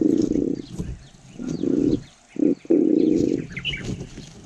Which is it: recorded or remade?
recorded